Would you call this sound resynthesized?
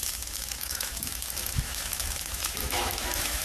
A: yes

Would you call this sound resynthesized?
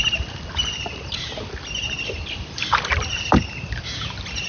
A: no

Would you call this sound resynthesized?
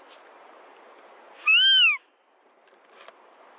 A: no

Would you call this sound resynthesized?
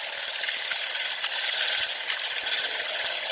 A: no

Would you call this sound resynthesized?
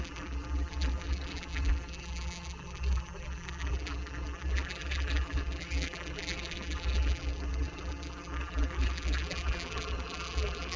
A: yes